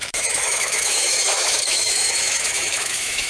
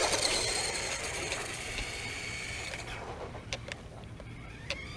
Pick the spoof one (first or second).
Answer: first